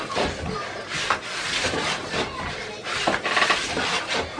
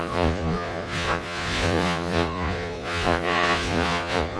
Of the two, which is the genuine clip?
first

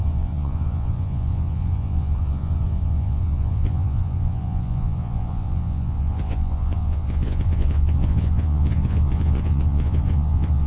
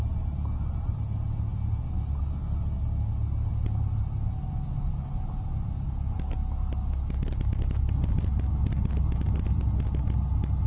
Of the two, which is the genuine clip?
second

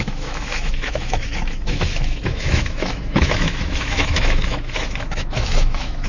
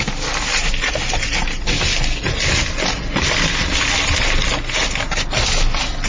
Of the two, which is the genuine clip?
second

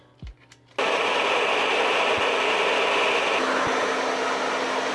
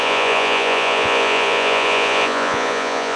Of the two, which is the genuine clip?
first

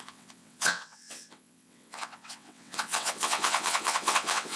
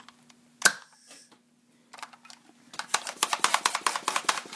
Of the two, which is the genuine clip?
second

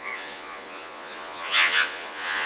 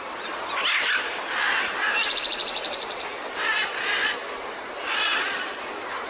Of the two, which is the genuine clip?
second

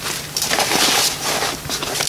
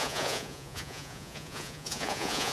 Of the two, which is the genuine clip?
first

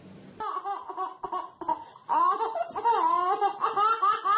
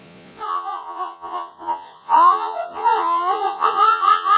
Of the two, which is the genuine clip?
first